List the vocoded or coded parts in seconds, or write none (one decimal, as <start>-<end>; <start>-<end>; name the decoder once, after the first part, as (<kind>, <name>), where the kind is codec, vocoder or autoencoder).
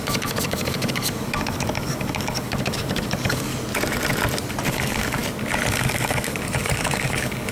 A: 0.0-3.5 (codec, DAC); 4.7-5.2; 5.7-7.5